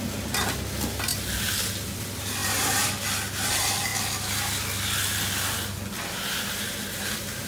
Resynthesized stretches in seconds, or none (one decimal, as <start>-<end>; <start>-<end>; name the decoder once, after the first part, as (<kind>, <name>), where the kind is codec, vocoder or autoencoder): 2.4-2.9 (vocoder, BigVGAN v2)